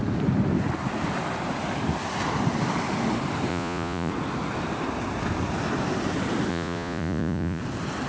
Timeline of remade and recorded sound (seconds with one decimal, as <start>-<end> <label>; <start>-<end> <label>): 0.0-3.5 recorded; 3.5-4.1 remade; 4.1-6.5 recorded; 6.5-7.6 remade; 7.6-8.1 recorded